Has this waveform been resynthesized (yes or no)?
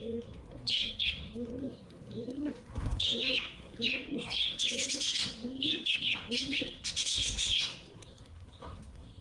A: yes